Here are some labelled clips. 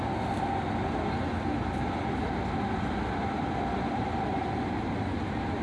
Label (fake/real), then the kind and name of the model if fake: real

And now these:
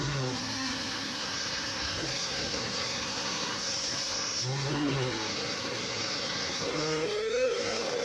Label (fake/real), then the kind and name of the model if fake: fake, codec, SNAC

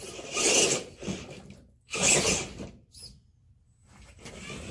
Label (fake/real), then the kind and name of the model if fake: real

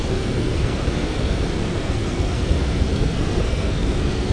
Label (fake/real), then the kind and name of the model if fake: fake, codec, SNAC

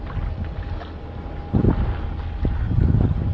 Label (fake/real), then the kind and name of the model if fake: real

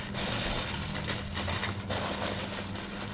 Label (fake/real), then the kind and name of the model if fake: real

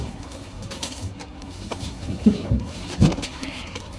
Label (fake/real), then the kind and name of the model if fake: fake, codec, SNAC